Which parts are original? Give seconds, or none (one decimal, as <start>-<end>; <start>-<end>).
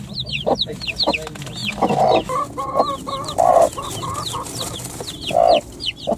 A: 0.0-6.2